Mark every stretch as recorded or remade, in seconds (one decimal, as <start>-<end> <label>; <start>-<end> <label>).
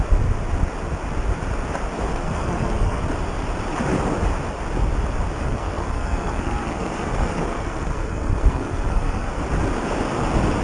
0.0-2.1 recorded; 2.1-3.0 remade; 3.0-5.4 recorded; 5.4-9.4 remade; 9.4-10.6 recorded